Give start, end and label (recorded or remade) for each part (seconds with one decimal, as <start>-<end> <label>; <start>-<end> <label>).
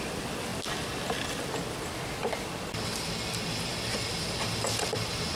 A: 0.0-5.4 recorded